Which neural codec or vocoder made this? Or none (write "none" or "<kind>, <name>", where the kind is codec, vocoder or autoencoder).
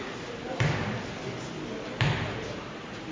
none